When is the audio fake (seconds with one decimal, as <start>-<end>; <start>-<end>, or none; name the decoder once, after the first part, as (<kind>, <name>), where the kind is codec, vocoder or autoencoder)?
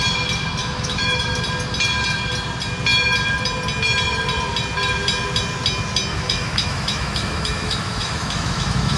0.6-1.4 (autoencoder, DAC-VAE); 6.1-9.0